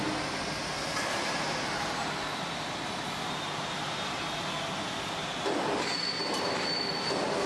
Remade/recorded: recorded